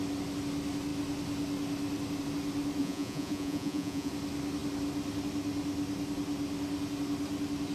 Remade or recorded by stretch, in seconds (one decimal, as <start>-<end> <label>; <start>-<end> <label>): 0.0-2.8 recorded; 2.8-4.1 remade; 4.1-7.7 recorded